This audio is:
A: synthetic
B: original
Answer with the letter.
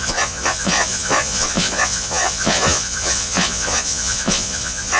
A